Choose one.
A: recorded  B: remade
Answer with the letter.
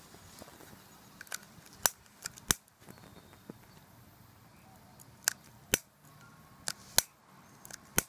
A